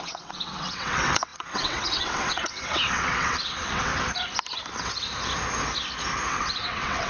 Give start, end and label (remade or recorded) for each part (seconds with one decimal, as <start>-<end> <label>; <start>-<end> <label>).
0.0-3.9 remade; 3.9-6.3 recorded; 6.3-7.1 remade